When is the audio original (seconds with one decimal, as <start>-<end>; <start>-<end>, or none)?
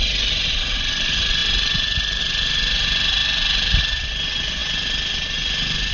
0.0-5.9